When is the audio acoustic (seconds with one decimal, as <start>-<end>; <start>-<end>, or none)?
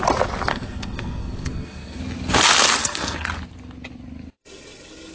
0.0-0.5; 2.0-2.8; 3.3-5.1